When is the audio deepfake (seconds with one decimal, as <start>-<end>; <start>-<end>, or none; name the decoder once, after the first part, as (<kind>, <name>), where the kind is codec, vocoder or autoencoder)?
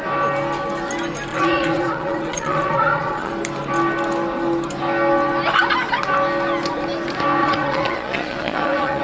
1.3-3.3 (vocoder, Vocos); 7.4-9.0